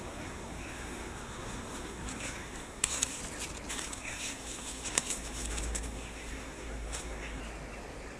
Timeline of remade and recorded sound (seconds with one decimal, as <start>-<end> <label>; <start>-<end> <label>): 0.0-3.2 remade; 3.2-3.7 recorded; 3.7-7.4 remade; 7.4-8.2 recorded